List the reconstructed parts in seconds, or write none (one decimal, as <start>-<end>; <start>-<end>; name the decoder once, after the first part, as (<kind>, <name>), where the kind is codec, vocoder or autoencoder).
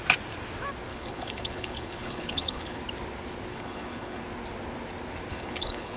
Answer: 0.9-2.8 (codec, HILCodec); 3.5-4.2; 5.3-6.0